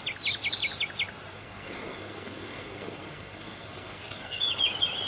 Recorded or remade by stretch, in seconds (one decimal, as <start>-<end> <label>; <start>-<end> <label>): 0.0-1.3 recorded; 1.3-4.4 remade; 4.4-5.1 recorded